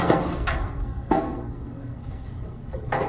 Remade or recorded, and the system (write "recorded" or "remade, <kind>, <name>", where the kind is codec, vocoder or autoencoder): remade, codec, SNAC